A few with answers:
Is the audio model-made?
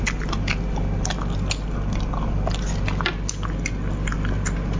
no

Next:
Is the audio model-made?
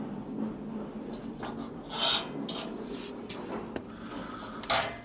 no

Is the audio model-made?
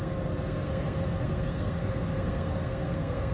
yes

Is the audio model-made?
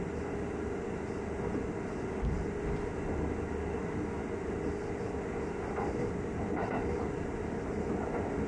no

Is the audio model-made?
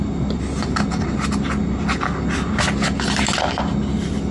no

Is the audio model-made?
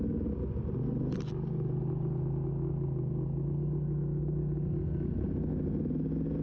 no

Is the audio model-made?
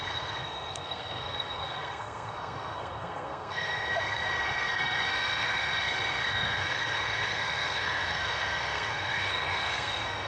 yes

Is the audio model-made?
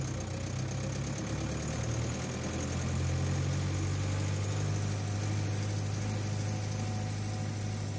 no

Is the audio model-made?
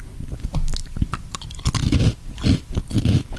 no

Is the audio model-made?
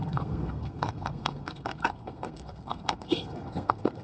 yes